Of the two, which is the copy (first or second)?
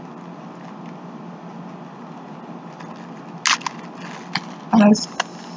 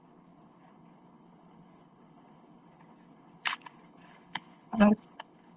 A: second